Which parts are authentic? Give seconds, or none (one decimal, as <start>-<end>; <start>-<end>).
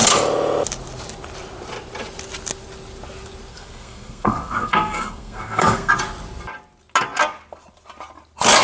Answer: 0.0-3.5; 5.9-8.6